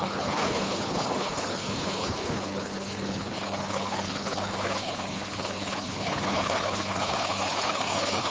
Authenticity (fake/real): fake